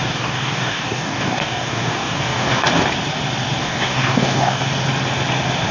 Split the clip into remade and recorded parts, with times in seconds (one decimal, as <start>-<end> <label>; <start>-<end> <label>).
0.0-2.6 remade; 2.6-3.6 recorded; 3.6-4.6 remade; 4.6-5.7 recorded

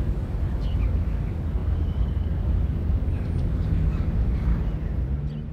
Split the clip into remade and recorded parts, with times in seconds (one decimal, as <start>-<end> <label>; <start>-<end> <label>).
0.0-4.5 remade; 4.5-5.5 recorded

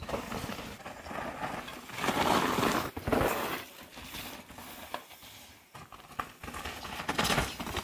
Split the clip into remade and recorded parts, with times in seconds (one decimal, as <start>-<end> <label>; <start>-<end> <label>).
0.0-7.8 recorded

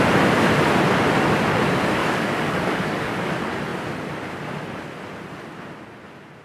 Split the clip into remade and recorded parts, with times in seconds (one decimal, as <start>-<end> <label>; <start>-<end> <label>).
0.0-2.0 recorded; 2.0-3.3 remade; 3.3-6.4 recorded

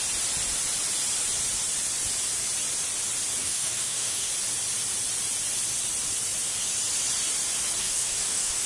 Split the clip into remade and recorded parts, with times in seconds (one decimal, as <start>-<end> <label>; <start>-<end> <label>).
0.0-3.4 recorded; 3.4-4.3 remade; 4.3-7.8 recorded; 7.8-8.7 remade

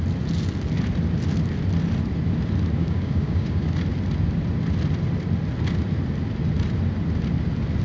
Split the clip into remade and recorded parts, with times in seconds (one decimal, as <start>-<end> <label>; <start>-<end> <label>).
0.0-2.8 recorded; 2.8-3.7 remade; 3.7-7.8 recorded